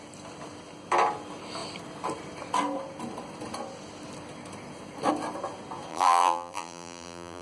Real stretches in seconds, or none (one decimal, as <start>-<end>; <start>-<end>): 0.0-5.9